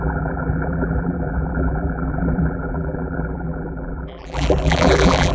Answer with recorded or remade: remade